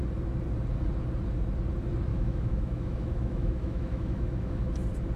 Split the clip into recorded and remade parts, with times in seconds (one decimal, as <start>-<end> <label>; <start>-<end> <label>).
0.0-2.1 recorded; 2.1-4.7 remade; 4.7-5.2 recorded